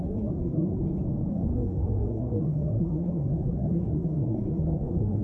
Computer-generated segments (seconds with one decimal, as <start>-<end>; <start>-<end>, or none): 0.0-0.8; 1.3-5.2